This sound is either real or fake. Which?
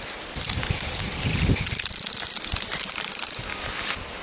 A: real